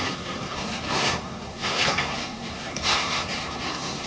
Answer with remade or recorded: remade